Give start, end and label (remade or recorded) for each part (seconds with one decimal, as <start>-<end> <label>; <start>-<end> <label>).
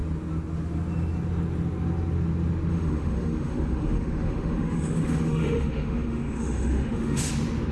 0.0-2.7 recorded; 2.7-7.3 remade; 7.3-7.7 recorded